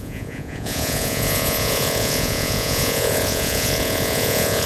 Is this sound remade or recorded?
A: remade